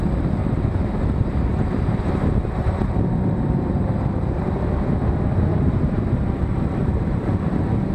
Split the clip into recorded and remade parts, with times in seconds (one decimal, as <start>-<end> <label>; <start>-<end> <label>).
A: 0.0-0.4 recorded; 0.4-5.1 remade; 5.1-5.5 recorded; 5.5-6.0 remade; 6.0-6.8 recorded; 6.8-7.3 remade; 7.3-7.9 recorded